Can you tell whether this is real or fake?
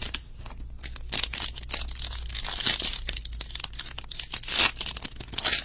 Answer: real